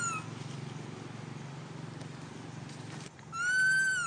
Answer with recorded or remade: recorded